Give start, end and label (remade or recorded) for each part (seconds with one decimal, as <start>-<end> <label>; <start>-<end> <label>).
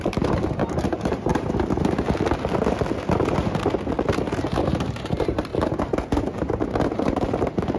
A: 0.0-1.3 remade; 1.3-4.5 recorded; 4.5-5.5 remade; 5.5-6.9 recorded; 6.9-7.8 remade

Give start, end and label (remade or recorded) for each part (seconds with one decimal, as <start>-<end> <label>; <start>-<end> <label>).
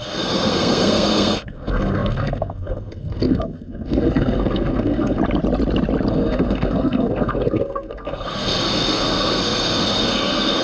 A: 0.0-5.2 remade; 5.2-6.1 recorded; 6.1-10.6 remade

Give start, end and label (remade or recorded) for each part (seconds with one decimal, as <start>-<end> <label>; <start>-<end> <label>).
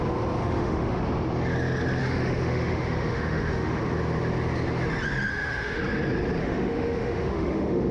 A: 0.0-0.4 recorded; 0.4-1.0 remade; 1.0-2.0 recorded; 2.0-3.8 remade; 3.8-5.3 recorded; 5.3-5.8 remade; 5.8-6.4 recorded; 6.4-7.9 remade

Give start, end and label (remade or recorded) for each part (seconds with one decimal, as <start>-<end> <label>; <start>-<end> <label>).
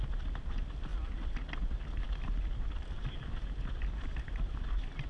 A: 0.0-5.1 recorded